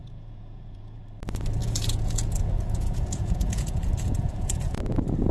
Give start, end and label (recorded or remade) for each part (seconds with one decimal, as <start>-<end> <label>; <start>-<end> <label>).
0.0-1.0 remade; 1.0-1.6 recorded; 1.6-4.8 remade; 4.8-5.3 recorded